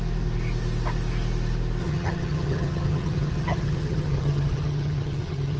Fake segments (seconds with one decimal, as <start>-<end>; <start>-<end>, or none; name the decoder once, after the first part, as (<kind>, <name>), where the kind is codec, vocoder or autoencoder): 1.8-5.6 (vocoder, HiFi-GAN)